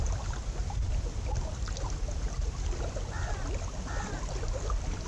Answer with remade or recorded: recorded